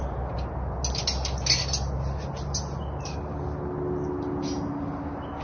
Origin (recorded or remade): recorded